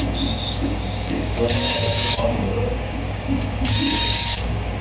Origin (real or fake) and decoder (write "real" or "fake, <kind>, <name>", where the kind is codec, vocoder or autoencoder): fake, codec, DAC